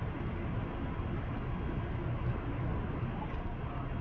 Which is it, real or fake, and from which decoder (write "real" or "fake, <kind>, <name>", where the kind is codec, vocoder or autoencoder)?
real